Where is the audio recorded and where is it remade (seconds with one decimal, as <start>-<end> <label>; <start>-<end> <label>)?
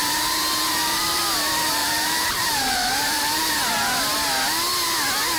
0.0-1.2 remade; 1.2-1.8 recorded; 1.8-3.5 remade; 3.5-5.4 recorded